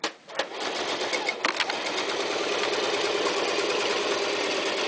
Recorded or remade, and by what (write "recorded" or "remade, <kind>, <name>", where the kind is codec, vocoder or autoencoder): recorded